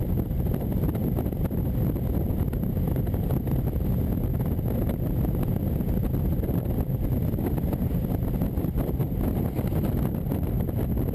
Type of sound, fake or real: real